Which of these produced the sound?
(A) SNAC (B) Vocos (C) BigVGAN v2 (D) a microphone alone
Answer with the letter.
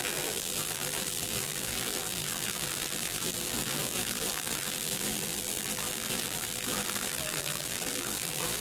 C